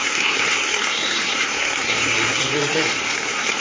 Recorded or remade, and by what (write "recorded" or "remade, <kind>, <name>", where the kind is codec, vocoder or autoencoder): remade, codec, SNAC